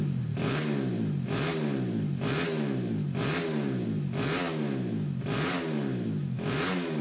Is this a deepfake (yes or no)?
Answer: no